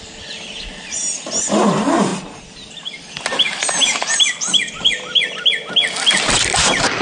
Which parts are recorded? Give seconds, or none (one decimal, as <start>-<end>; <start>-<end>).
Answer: 0.0-3.8; 4.7-7.0